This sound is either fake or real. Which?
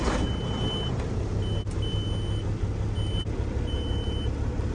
real